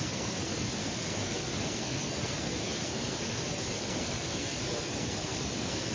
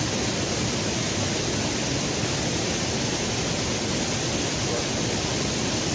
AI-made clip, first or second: first